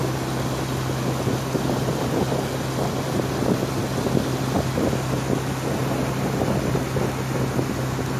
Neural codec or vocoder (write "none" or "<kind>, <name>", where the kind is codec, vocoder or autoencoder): none